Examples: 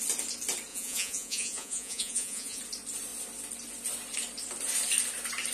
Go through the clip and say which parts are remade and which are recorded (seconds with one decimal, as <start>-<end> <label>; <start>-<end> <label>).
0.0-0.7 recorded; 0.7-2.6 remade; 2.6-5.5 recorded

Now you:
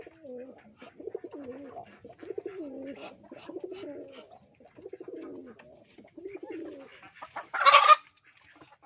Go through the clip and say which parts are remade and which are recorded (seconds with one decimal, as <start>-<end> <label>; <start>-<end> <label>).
0.0-8.9 recorded

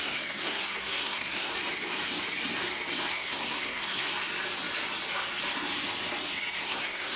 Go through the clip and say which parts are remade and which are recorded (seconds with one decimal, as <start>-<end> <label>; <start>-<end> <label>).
0.0-1.5 remade; 1.5-3.1 recorded; 3.1-4.1 remade; 4.1-6.6 recorded; 6.6-7.2 remade

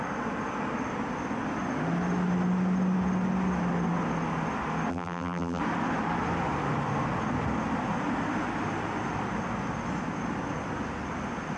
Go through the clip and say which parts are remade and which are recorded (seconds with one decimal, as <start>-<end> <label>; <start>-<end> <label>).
0.0-4.9 recorded; 4.9-5.6 remade; 5.6-11.6 recorded

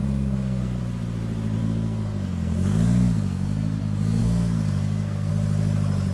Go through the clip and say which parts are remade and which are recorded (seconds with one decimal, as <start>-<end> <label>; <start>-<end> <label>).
0.0-0.8 remade; 0.8-1.6 recorded; 1.6-3.8 remade; 3.8-4.2 recorded; 4.2-5.3 remade; 5.3-6.1 recorded

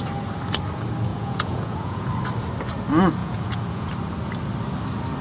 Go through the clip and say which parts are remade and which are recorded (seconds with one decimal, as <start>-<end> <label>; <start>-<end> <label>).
0.0-1.1 recorded; 1.1-2.1 remade; 2.1-3.2 recorded; 3.2-3.9 remade; 3.9-5.2 recorded